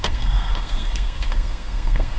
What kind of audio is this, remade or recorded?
remade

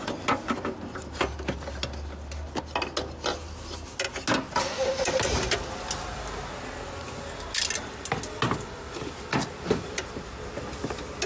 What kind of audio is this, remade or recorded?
recorded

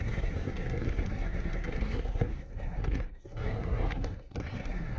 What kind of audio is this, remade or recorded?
remade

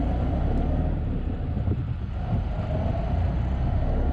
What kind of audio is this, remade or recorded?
recorded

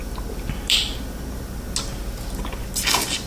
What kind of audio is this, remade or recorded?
recorded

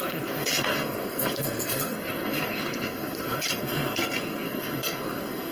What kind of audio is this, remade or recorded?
remade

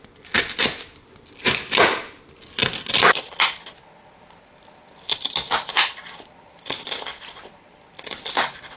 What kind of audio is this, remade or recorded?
recorded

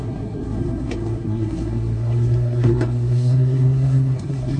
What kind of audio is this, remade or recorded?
remade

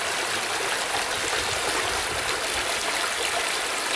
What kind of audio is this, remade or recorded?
recorded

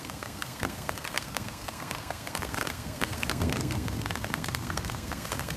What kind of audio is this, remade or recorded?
remade